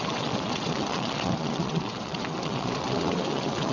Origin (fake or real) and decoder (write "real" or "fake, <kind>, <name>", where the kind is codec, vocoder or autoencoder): fake, vocoder, WaveNeXt